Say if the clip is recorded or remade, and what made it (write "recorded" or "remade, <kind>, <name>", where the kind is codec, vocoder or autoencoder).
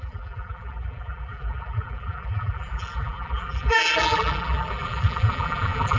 remade, vocoder, BigVGAN v2